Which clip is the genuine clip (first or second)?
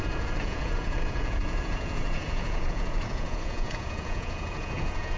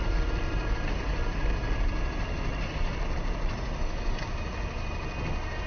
second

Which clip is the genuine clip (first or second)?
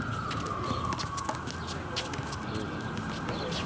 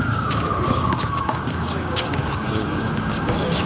first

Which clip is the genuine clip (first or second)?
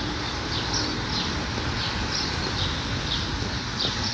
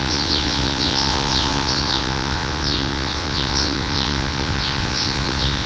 first